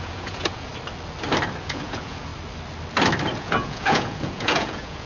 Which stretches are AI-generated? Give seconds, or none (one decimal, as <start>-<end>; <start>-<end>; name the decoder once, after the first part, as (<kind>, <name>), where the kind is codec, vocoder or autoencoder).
0.0-0.7 (vocoder, Vocos); 1.6-2.3; 3.4-5.1